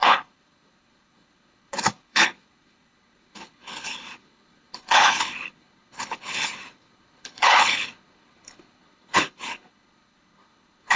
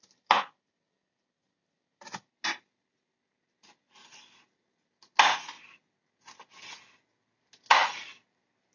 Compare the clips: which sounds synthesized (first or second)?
first